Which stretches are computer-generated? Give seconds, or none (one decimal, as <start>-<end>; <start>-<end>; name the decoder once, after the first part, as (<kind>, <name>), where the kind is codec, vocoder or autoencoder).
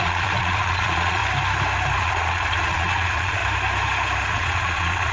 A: 0.0-1.2 (vocoder, Vocos); 2.0-3.4; 4.3-5.1